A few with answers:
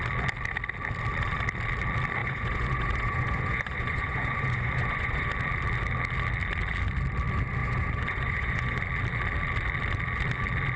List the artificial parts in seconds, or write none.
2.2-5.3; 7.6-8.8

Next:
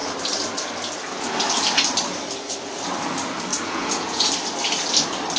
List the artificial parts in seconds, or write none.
3.5-4.3